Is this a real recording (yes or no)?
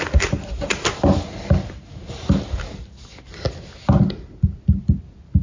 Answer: yes